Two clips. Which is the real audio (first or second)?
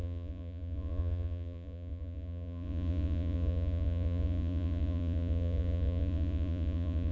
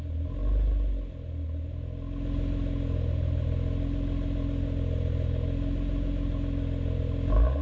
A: second